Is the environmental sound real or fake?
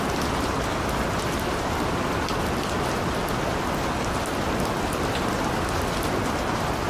real